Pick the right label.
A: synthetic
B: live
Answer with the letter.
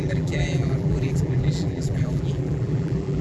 A